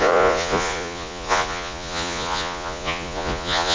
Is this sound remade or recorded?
remade